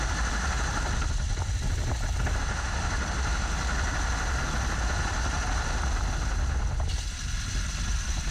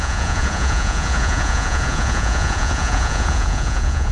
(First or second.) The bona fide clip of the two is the first